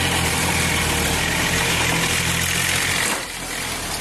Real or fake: real